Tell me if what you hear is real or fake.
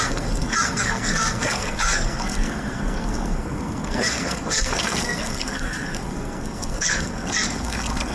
fake